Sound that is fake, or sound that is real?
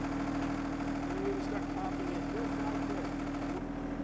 real